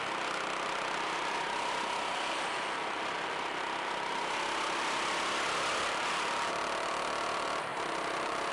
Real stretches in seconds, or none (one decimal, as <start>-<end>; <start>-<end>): 0.0-8.5